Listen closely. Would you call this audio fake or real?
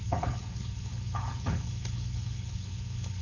fake